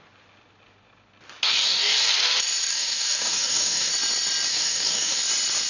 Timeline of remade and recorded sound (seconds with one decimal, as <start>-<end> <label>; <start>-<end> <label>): 0.0-1.5 recorded; 1.5-2.1 remade; 2.1-2.7 recorded; 2.7-3.9 remade; 3.9-4.5 recorded; 4.5-5.2 remade; 5.2-5.7 recorded